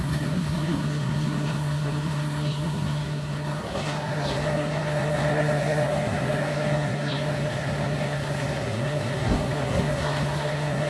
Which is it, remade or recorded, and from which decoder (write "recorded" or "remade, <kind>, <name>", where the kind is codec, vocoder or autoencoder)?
remade, codec, SNAC